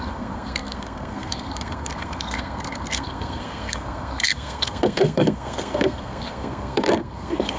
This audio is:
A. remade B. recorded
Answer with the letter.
A